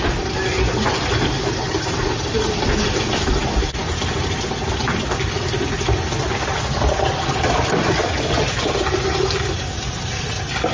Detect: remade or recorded recorded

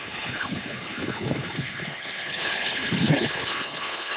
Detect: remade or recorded remade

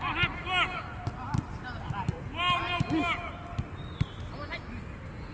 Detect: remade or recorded recorded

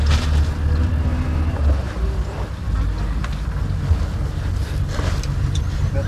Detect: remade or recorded recorded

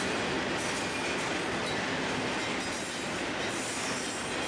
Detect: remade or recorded recorded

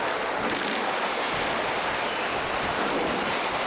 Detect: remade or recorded recorded